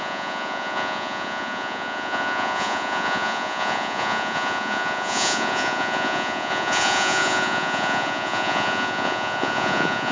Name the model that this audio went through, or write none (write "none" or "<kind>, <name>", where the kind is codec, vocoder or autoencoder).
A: vocoder, Vocos